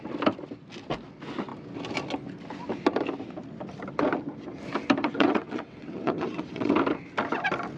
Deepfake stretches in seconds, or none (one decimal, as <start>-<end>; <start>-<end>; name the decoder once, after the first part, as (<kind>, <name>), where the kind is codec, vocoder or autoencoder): 5.0-6.7 (vocoder, WaveNeXt)

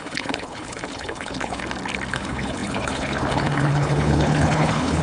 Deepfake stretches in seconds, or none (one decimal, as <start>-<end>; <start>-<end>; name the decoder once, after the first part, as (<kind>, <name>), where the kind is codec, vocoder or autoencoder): 0.0-1.6 (codec, HILCodec); 2.1-5.0

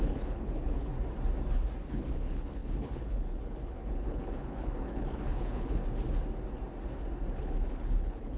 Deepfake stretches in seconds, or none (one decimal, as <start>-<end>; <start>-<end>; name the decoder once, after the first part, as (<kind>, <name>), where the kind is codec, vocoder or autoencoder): 0.0-0.9 (codec, HILCodec); 1.8-5.8; 7.4-8.4

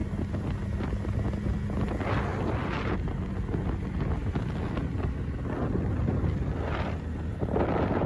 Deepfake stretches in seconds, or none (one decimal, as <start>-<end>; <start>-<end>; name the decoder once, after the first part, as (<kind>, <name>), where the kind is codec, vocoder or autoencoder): none

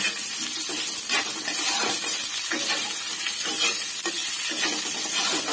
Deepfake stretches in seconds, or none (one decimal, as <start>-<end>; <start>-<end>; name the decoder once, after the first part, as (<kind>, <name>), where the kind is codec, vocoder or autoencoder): none

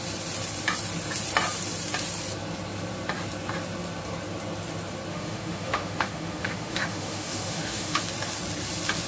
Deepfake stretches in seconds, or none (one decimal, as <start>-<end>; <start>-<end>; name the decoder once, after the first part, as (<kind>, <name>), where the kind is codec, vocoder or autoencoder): 5.1-8.0 (autoencoder, DAC-VAE)